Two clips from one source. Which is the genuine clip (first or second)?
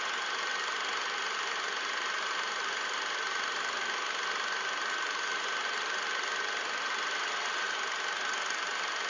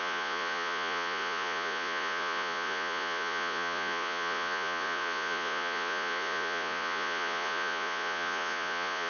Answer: first